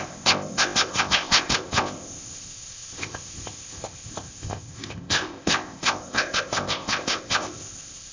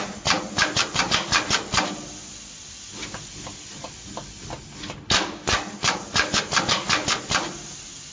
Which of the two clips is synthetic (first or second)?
first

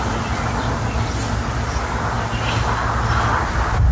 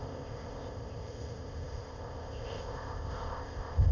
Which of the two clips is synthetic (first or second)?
second